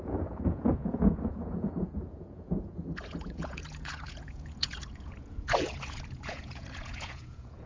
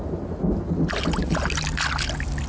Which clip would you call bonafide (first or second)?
second